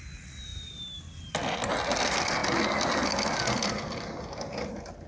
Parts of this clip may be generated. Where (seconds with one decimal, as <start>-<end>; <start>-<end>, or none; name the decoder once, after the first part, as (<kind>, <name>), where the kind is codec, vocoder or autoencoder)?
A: none